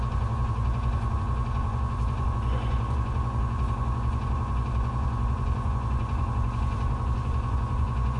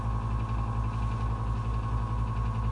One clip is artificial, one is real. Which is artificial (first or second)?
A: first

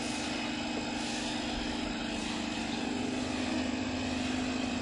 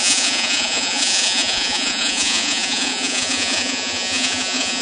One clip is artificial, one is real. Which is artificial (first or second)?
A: second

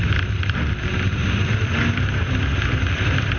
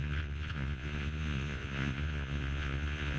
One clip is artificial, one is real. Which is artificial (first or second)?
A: second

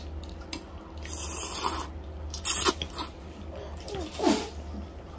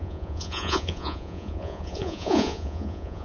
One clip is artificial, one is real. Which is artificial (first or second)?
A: second